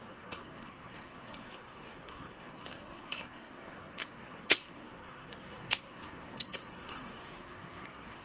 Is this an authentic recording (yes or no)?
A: no